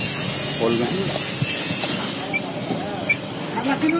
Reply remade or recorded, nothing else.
recorded